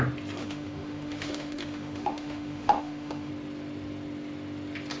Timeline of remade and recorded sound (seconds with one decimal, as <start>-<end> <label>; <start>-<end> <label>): 0.0-0.4 recorded; 0.4-3.3 remade; 3.3-5.0 recorded